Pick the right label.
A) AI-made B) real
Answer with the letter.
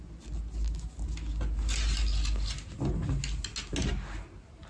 B